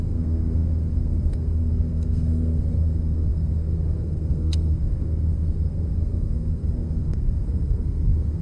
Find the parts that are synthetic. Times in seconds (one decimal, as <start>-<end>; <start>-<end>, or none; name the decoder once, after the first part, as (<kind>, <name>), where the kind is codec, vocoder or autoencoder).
0.0-8.4 (codec, SNAC)